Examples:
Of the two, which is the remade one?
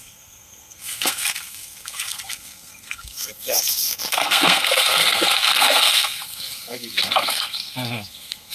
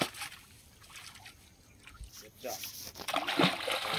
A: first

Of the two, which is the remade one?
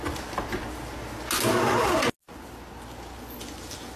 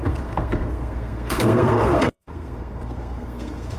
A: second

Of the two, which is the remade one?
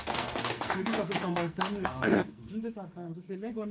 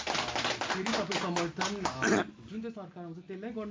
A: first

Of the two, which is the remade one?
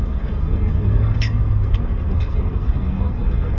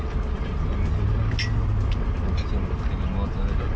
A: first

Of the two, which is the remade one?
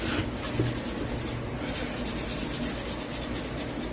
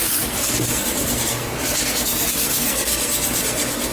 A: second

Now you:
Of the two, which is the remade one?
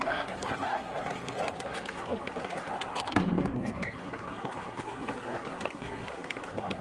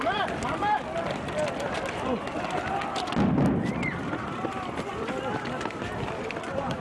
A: first